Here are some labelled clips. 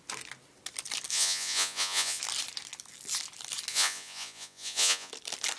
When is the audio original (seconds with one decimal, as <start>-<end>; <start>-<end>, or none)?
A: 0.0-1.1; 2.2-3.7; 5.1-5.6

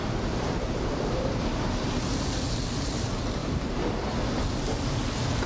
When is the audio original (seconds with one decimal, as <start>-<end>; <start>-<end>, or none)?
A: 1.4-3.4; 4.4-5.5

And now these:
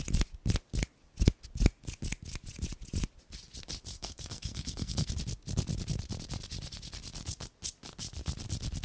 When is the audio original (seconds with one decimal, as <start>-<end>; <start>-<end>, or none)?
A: 0.0-3.9; 5.1-8.8